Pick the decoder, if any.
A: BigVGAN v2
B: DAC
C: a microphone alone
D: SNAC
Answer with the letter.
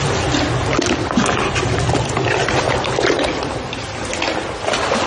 C